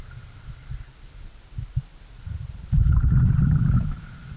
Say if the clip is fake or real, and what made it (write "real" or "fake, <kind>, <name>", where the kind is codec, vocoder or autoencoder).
real